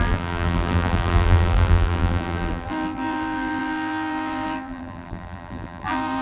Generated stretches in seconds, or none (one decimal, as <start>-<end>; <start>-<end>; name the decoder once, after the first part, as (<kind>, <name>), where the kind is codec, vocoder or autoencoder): 0.0-6.2 (vocoder, BigVGAN v2)